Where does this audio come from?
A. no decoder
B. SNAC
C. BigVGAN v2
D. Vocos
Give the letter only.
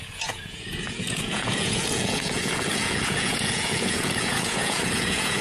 D